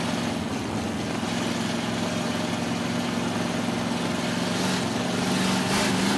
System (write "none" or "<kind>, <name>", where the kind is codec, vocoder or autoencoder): none